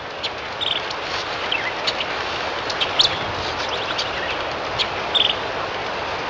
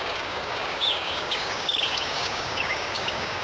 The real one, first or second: first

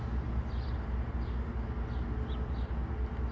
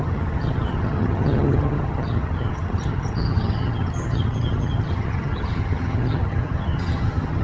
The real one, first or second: first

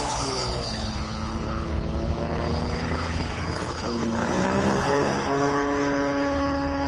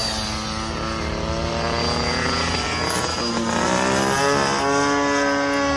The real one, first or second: second